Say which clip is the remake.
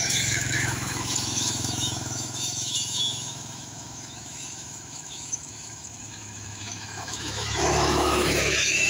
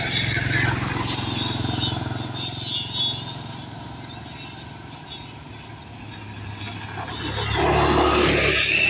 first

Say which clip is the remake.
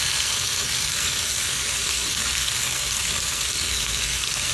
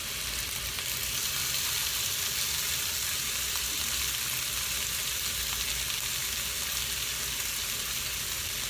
first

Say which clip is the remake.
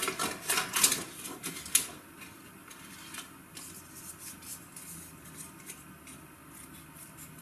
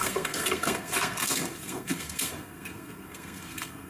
second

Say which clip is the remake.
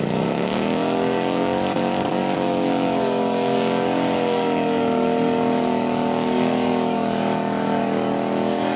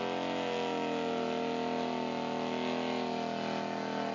first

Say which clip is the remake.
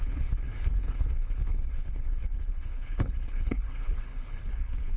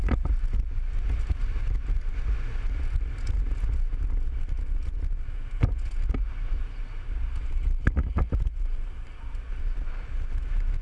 first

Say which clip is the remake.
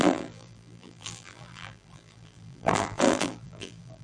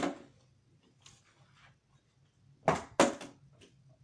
first